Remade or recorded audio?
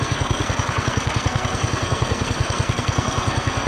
remade